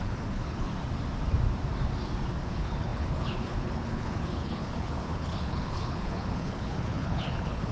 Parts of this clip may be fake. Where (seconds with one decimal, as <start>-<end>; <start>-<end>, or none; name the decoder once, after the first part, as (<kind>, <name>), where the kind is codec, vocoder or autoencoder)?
0.0-0.7 (codec, HILCodec); 2.5-7.7